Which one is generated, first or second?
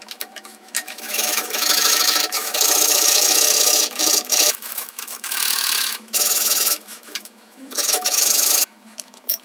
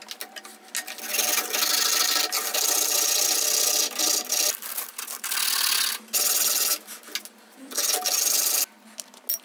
first